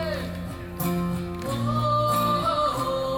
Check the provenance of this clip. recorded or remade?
recorded